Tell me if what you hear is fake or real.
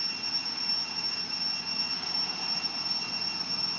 real